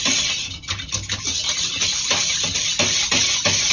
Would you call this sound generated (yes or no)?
no